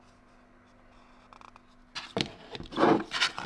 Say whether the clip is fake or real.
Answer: real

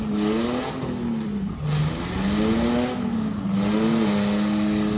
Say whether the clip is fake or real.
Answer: real